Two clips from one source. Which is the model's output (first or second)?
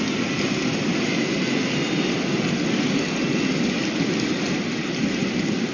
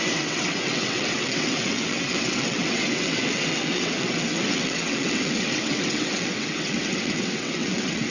second